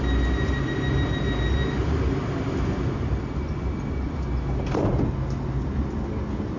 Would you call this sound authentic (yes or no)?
yes